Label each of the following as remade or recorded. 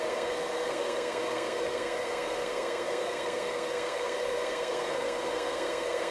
remade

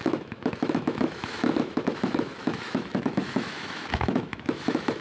remade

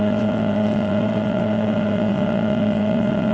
remade